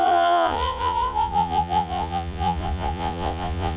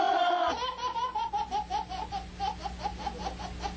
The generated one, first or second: first